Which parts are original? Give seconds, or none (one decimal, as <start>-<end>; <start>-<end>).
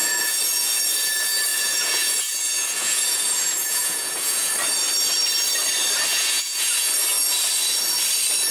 0.8-1.5; 4.5-6.1; 6.9-8.5